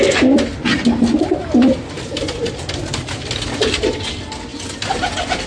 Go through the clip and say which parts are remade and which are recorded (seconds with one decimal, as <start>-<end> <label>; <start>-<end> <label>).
0.0-5.5 recorded